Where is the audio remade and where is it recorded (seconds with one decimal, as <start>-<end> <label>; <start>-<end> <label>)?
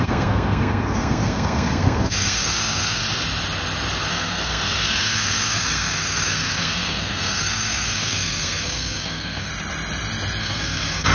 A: 0.0-3.0 remade; 3.0-4.1 recorded; 4.1-9.5 remade; 9.5-10.4 recorded; 10.4-11.1 remade